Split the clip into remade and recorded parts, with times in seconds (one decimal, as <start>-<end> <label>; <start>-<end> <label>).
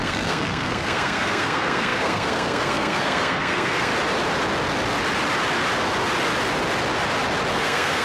0.0-3.9 remade; 3.9-7.5 recorded; 7.5-8.0 remade